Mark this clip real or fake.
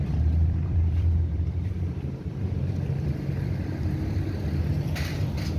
fake